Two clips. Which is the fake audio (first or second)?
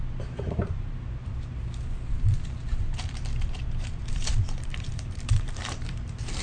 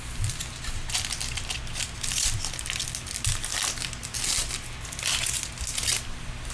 first